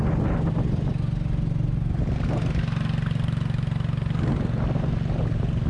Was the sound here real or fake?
real